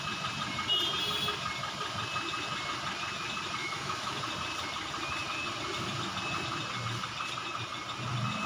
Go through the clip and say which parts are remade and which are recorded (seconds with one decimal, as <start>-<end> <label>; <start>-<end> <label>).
0.0-3.6 recorded; 3.6-4.2 remade; 4.2-8.5 recorded